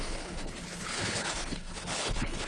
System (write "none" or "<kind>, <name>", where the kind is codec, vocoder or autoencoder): codec, HILCodec